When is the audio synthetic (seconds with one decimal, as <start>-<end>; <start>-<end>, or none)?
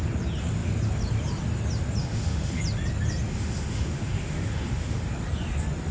2.0-2.6; 3.3-5.1